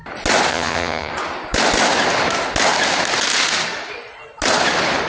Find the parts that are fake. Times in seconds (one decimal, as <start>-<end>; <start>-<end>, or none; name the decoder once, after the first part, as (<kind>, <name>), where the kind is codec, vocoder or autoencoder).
0.5-1.1 (vocoder, HiFi-GAN)